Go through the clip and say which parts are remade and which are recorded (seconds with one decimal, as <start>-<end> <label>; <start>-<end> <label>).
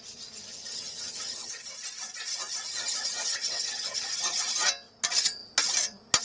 0.0-0.5 recorded; 0.5-1.7 remade; 1.7-2.7 recorded; 2.7-4.1 remade; 4.1-6.2 recorded